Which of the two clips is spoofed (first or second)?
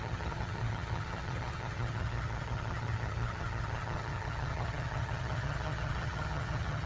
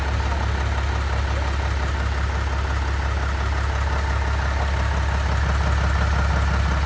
first